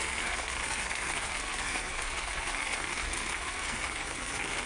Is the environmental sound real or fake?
fake